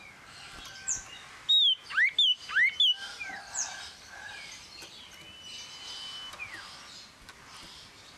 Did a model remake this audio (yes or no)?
no